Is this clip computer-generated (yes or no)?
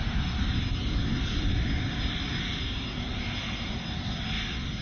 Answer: no